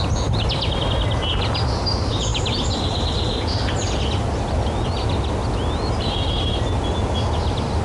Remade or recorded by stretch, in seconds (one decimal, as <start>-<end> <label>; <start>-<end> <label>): 0.0-7.8 recorded